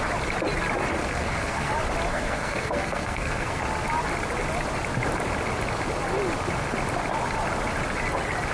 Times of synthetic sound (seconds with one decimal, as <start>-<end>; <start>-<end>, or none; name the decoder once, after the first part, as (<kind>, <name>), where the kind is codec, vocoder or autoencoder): 1.0-1.7 (codec, SNAC); 2.1-3.6